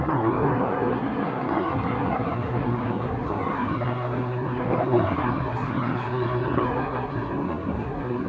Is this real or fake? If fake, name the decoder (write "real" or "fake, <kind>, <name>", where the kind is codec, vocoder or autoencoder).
fake, codec, SNAC